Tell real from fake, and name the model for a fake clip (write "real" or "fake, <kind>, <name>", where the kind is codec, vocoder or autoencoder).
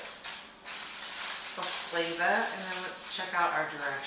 real